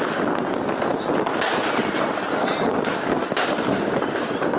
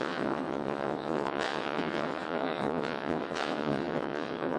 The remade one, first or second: second